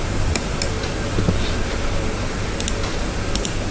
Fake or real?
real